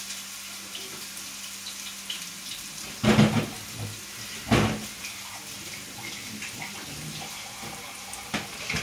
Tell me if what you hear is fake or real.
real